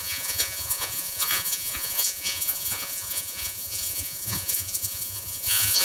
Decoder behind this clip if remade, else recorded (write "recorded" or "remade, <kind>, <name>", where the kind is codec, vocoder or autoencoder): remade, vocoder, Vocos